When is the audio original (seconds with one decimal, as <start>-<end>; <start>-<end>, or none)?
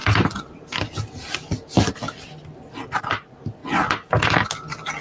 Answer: 0.0-5.0